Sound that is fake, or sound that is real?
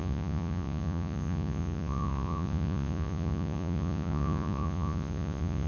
fake